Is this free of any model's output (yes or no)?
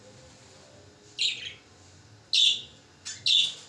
yes